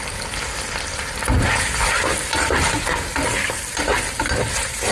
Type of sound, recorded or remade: recorded